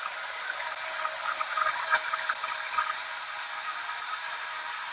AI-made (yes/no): no